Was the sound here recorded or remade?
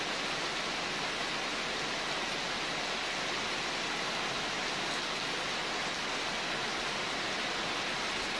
recorded